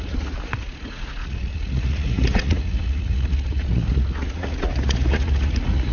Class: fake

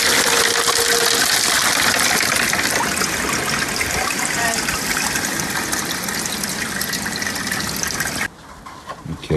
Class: real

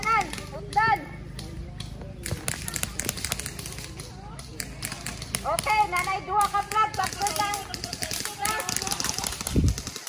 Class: real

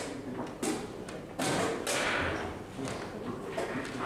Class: real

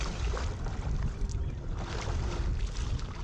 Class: real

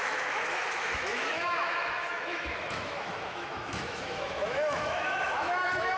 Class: fake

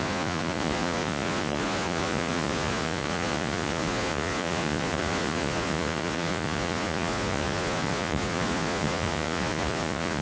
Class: fake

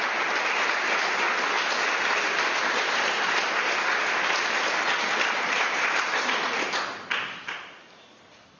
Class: fake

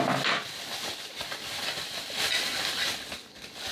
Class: real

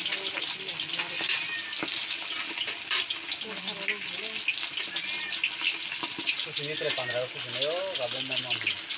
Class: real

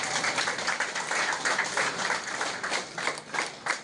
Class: real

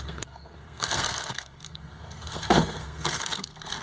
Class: fake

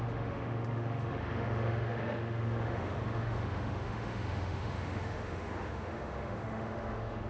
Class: fake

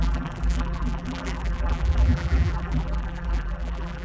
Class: fake